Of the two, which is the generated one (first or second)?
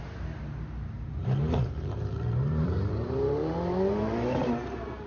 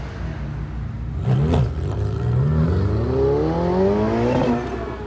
first